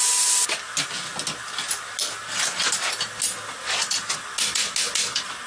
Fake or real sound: real